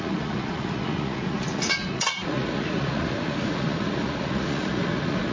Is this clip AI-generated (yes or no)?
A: yes